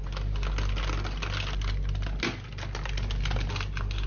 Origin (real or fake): real